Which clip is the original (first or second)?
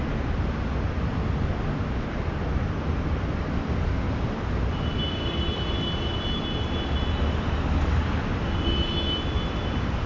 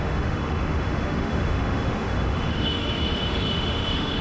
first